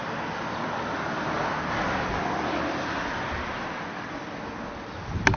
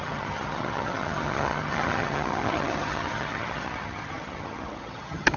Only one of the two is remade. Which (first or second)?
second